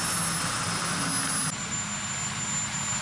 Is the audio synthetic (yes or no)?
no